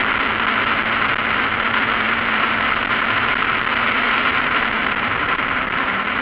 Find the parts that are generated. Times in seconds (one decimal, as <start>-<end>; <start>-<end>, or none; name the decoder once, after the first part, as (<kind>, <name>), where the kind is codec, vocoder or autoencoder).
0.6-6.2 (vocoder, BigVGAN v2)